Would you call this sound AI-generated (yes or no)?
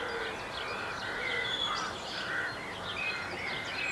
no